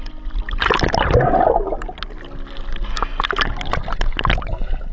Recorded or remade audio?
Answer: recorded